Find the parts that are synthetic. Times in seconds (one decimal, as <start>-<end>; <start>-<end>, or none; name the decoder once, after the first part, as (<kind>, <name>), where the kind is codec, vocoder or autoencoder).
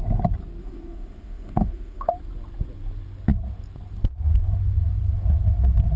0.6-2.1 (autoencoder, DAC-VAE)